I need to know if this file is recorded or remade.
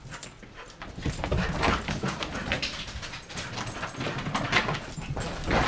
recorded